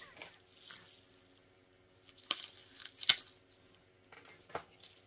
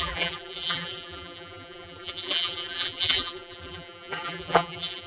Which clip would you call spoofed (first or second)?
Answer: second